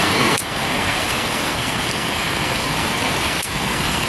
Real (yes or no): no